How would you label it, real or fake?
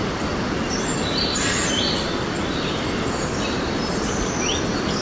real